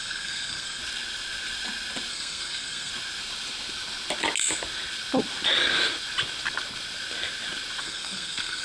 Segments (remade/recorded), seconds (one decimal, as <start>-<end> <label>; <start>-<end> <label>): 0.0-0.8 remade; 0.8-2.1 recorded; 2.1-2.9 remade; 2.9-7.8 recorded; 7.8-8.6 remade